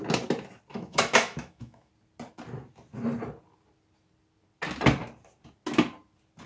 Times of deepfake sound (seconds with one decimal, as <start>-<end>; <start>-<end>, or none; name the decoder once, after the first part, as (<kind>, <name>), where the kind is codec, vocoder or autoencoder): 0.7-1.9 (autoencoder, DAC-VAE)